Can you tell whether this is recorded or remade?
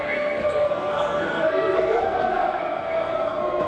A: remade